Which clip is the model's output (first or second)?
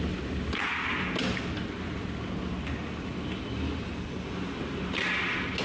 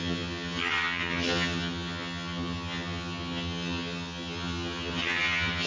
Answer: second